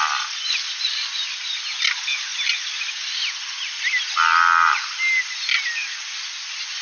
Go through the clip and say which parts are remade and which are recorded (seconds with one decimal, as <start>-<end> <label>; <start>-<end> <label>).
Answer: 0.0-6.8 recorded